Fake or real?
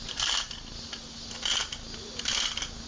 real